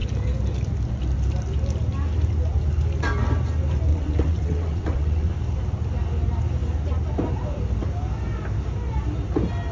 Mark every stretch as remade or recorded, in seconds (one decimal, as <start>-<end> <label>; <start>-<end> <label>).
0.0-3.9 recorded; 3.9-5.3 remade; 5.3-9.7 recorded